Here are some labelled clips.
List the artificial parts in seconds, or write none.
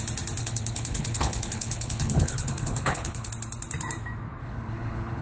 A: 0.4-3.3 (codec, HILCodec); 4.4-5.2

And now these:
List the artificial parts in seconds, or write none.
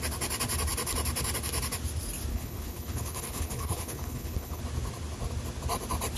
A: 2.3-4.6 (codec, HILCodec)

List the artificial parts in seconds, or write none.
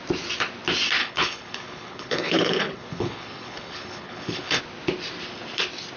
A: 1.0-4.6 (codec, HILCodec)